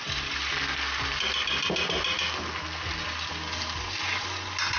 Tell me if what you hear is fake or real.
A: real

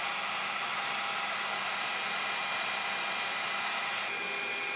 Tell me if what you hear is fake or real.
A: real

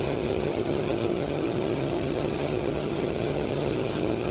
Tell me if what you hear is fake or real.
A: fake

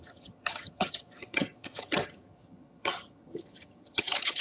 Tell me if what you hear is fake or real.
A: fake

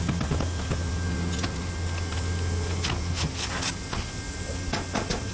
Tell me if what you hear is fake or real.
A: real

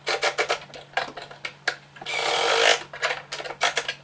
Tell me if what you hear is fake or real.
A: real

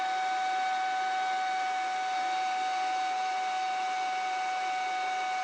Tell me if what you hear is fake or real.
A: real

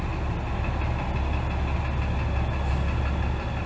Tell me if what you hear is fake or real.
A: real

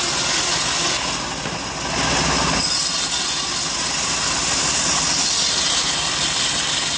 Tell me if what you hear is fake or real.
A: real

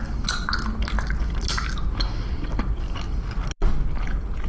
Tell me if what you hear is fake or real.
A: real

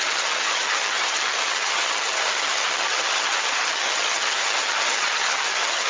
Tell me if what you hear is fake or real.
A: fake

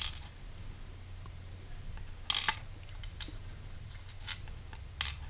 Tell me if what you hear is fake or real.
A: real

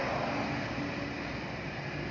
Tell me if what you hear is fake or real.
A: real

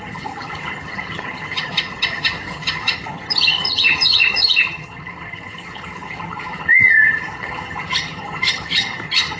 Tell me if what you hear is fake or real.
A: fake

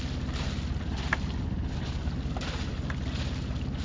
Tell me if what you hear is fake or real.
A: real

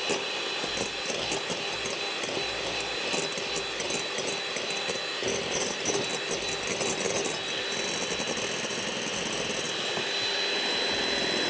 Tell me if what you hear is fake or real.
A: real